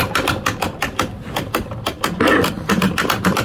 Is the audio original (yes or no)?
yes